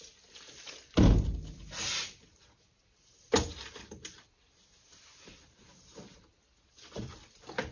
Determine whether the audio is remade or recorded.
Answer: recorded